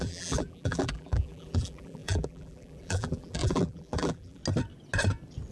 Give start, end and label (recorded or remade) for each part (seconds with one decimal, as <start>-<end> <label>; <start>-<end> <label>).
0.0-4.4 remade; 4.4-5.5 recorded